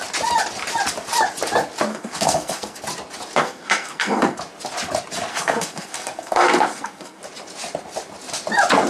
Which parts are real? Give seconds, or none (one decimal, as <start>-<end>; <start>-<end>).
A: 0.0-1.9; 2.8-3.4; 4.4-5.3; 7.2-8.9